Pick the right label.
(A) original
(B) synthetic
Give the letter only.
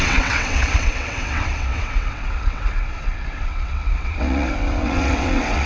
B